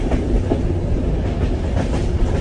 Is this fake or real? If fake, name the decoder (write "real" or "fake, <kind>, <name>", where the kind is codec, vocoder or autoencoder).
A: fake, vocoder, BigVGAN v2